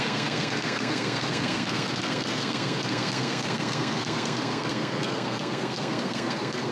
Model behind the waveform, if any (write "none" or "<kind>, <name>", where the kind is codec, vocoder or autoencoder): codec, SNAC